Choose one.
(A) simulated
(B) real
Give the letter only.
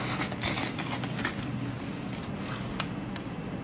B